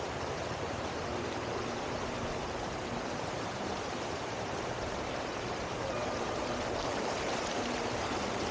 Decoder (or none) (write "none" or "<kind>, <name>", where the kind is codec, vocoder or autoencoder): vocoder, BigVGAN v2